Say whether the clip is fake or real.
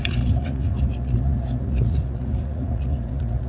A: fake